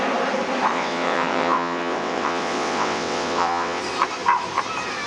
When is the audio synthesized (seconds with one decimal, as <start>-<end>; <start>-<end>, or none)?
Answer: 0.7-3.8